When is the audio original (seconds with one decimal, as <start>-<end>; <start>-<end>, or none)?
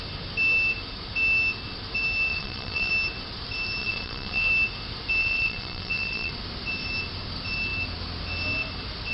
0.0-2.3; 2.9-3.8; 4.5-5.2; 6.3-9.1